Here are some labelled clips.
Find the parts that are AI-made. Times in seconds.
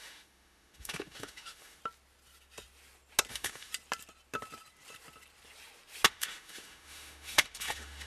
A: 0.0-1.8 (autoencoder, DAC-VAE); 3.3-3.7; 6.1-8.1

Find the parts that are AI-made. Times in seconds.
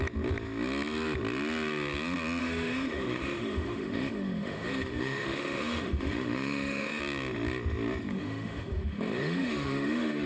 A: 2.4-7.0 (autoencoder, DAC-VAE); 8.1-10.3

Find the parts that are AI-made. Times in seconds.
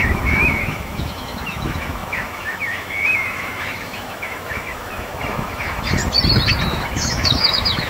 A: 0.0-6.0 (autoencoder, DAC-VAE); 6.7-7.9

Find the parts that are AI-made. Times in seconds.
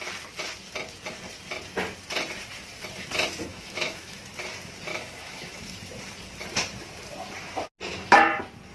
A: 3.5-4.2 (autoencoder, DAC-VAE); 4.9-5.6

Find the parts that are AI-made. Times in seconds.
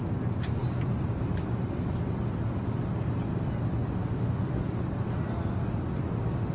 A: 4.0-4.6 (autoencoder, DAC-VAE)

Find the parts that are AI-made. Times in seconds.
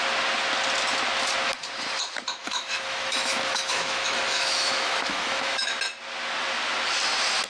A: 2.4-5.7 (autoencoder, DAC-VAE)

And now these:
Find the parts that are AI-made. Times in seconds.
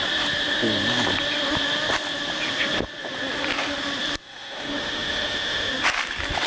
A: 4.2-5.7 (autoencoder, DAC-VAE)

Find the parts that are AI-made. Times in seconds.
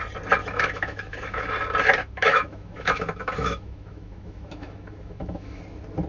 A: 0.4-1.5 (autoencoder, DAC-VAE); 2.0-5.6